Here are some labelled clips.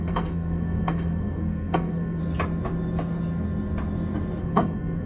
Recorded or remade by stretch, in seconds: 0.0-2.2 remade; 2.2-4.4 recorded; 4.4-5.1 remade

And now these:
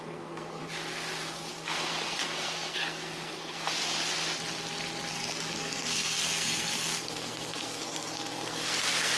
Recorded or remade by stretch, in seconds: 0.0-0.6 remade; 0.6-1.5 recorded; 1.5-3.7 remade; 3.7-5.1 recorded; 5.1-9.2 remade

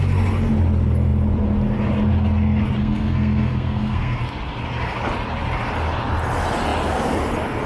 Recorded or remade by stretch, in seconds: 0.0-2.8 recorded; 2.8-4.2 remade; 4.2-7.7 recorded

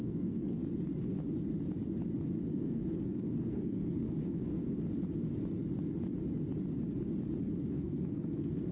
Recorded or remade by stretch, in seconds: 0.0-0.6 remade; 0.6-2.5 recorded; 2.5-4.6 remade; 4.6-7.7 recorded; 7.7-8.7 remade

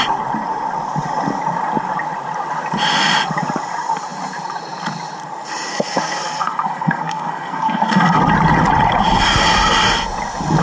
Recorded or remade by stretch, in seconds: 0.0-5.7 recorded; 5.7-8.2 remade; 8.2-10.6 recorded